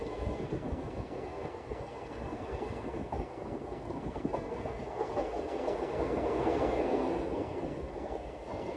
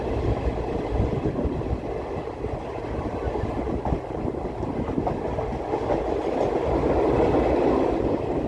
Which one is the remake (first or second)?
first